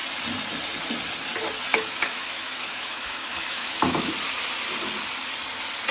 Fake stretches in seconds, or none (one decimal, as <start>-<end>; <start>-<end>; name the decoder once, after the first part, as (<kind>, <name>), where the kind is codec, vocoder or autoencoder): 1.7-4.1 (autoencoder, DAC-VAE)